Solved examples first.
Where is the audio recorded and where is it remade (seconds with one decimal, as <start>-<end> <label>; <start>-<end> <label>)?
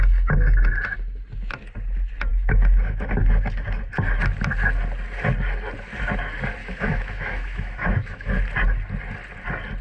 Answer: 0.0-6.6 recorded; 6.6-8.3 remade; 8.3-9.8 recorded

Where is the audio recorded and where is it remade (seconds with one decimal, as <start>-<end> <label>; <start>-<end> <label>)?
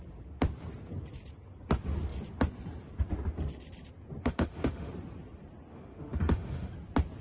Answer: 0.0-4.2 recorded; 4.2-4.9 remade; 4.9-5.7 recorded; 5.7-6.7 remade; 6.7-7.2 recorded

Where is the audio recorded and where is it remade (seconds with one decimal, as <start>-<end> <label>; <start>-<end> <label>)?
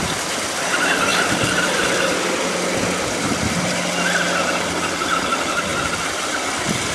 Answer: 0.0-6.9 recorded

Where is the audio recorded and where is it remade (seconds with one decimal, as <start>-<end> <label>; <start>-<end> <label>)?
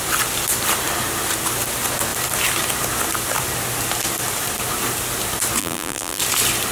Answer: 0.0-5.6 recorded; 5.6-6.2 remade; 6.2-6.7 recorded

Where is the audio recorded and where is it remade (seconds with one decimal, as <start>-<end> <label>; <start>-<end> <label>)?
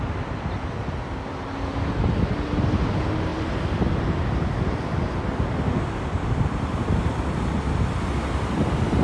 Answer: 0.0-9.0 recorded